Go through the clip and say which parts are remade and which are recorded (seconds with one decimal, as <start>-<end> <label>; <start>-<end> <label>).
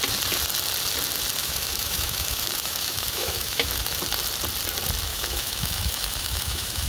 0.0-1.4 recorded; 1.4-4.0 remade; 4.0-5.1 recorded; 5.1-6.9 remade